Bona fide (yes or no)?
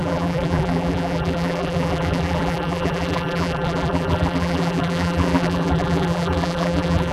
no